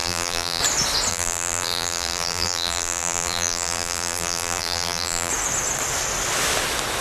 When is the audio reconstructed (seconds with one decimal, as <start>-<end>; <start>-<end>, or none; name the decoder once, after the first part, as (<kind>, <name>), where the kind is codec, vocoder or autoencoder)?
0.0-0.6 (vocoder, BigVGAN v2); 1.1-5.3